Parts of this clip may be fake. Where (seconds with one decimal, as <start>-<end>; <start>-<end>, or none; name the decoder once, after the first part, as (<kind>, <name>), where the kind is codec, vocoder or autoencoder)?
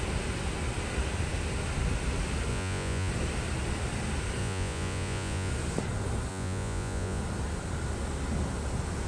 2.5-3.1 (vocoder, Vocos); 4.4-5.5; 6.3-7.2